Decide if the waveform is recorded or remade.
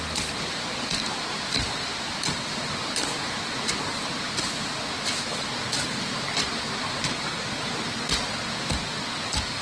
recorded